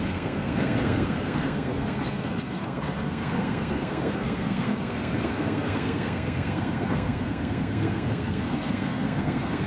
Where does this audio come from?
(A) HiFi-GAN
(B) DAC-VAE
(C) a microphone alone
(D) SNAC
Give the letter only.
D